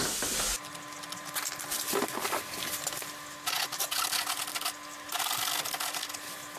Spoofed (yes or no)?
no